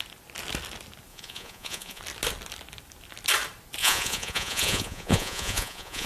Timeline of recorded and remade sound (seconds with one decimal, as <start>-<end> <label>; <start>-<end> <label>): 0.0-1.1 recorded; 1.1-2.0 remade; 2.0-3.8 recorded; 3.8-6.1 remade